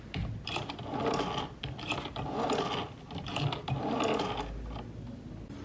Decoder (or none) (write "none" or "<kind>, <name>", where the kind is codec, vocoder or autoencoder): none